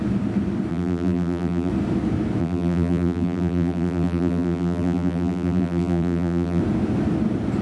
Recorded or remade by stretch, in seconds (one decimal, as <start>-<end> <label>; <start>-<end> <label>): 0.0-0.7 recorded; 0.7-1.7 remade; 1.7-2.4 recorded; 2.4-6.6 remade; 6.6-7.6 recorded